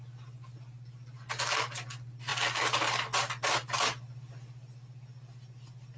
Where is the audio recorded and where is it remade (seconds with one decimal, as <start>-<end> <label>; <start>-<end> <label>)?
0.0-6.0 recorded